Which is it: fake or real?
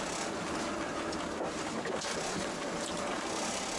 real